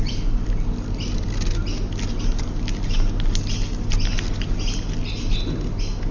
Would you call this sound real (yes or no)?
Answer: yes